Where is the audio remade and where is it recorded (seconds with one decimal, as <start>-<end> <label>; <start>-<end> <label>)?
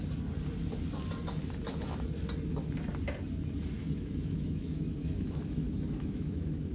0.0-3.8 recorded; 3.8-6.7 remade